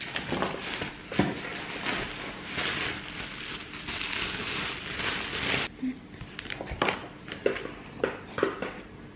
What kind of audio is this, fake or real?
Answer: real